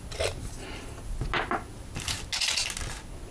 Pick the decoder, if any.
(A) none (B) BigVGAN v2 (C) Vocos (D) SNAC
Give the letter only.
A